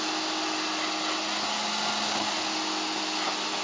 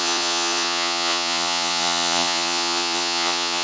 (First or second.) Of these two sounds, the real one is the first